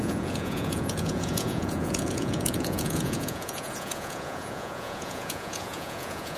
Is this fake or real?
fake